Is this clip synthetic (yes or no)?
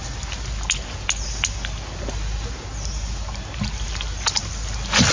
no